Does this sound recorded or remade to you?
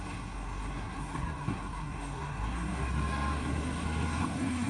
remade